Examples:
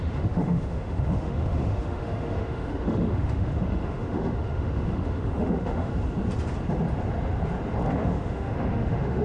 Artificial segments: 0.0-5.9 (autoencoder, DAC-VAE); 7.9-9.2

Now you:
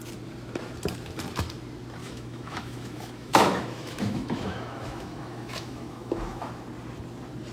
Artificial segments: 2.0-6.5 (autoencoder, DAC-VAE)

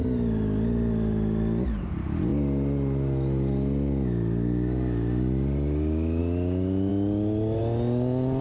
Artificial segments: none